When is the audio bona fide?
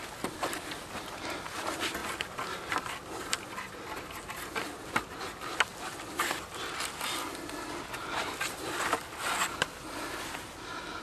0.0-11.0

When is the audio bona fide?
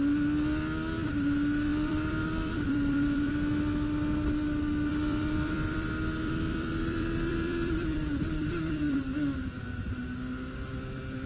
0.0-1.7; 3.3-4.9; 9.0-11.3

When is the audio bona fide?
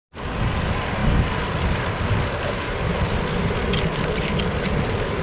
0.0-5.2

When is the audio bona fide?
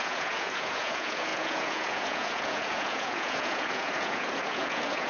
none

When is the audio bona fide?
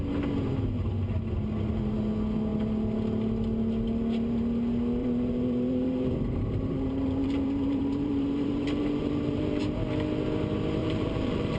0.0-5.0; 9.6-10.8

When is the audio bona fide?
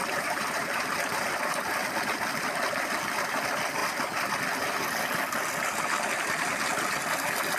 1.4-7.6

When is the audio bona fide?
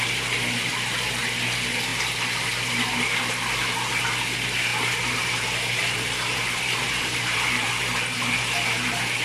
0.0-4.7; 7.7-9.2